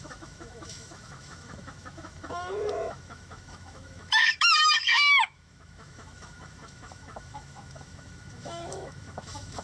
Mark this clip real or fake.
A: fake